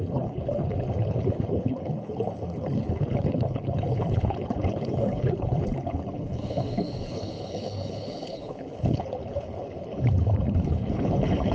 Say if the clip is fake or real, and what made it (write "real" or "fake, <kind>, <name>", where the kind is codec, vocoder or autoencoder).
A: fake, codec, HILCodec